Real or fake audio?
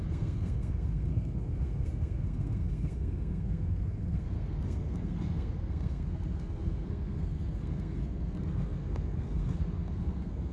fake